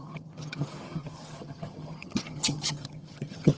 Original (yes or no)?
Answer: no